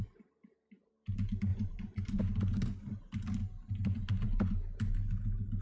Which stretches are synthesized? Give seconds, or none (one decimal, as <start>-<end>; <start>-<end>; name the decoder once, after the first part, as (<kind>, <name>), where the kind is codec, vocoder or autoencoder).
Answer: 0.0-0.9 (vocoder, BigVGAN v2); 1.5-2.2